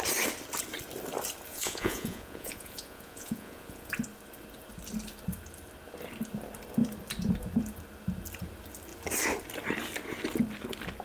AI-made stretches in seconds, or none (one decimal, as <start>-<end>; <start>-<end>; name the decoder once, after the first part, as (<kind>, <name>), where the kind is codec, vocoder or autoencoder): 1.5-3.9 (vocoder, Vocos)